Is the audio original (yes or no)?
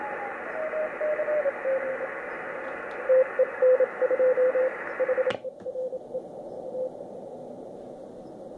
yes